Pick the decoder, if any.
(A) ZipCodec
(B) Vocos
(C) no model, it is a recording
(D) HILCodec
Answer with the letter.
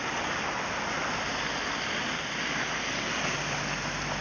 C